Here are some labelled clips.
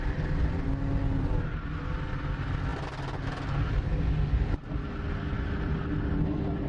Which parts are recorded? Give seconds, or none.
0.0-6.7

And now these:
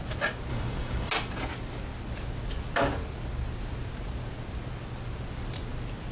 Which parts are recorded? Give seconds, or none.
0.0-0.5; 1.1-6.1

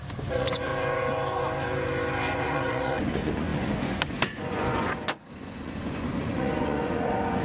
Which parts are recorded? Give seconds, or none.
0.7-2.3

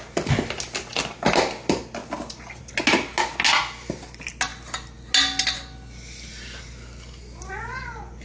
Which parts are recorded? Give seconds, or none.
0.0-8.2

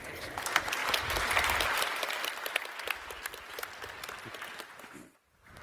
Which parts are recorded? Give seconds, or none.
0.0-5.6

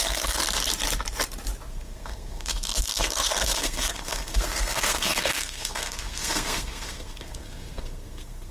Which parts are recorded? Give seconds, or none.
0.4-1.7

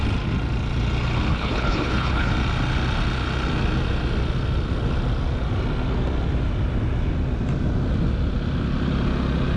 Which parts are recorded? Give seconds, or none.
0.0-1.3; 2.3-9.6